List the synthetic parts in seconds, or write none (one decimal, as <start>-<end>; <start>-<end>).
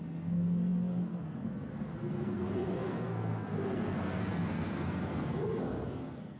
0.0-6.4